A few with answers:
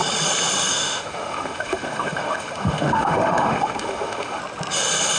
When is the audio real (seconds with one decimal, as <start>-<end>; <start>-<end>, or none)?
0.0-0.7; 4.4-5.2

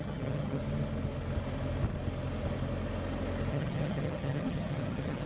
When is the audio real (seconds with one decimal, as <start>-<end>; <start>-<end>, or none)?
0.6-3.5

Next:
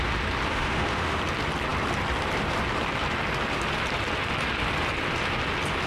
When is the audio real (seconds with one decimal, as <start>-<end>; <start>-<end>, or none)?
0.0-0.5; 1.2-5.9

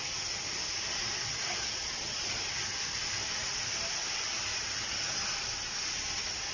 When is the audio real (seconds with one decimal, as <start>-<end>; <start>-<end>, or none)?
0.0-6.5

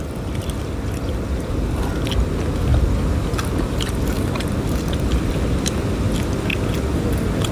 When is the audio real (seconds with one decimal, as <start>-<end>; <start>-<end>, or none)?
0.0-7.5